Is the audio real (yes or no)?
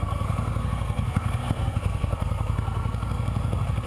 no